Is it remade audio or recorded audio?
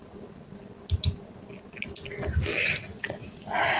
recorded